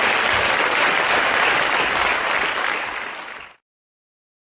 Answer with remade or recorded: recorded